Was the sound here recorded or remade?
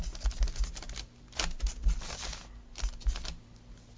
recorded